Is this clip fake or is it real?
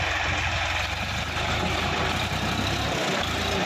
real